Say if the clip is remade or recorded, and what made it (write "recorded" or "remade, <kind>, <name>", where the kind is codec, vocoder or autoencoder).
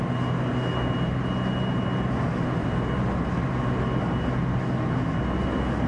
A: recorded